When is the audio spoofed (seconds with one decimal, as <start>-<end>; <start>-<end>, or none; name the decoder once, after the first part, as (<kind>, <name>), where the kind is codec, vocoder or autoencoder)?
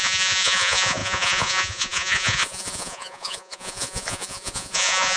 0.0-5.2 (vocoder, Vocos)